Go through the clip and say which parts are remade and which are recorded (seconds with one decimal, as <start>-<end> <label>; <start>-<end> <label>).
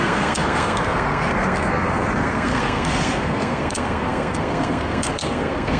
0.0-5.8 remade